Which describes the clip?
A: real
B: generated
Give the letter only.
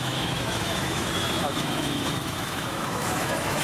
B